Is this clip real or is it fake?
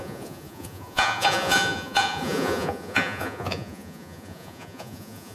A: fake